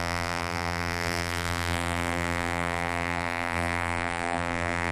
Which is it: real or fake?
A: fake